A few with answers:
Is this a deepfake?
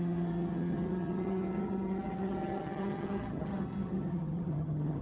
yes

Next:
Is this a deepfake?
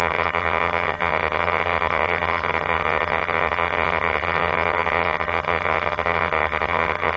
yes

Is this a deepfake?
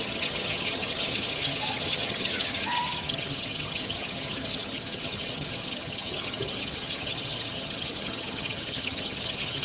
yes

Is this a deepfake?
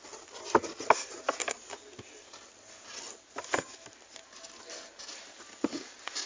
no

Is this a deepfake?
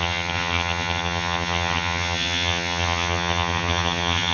yes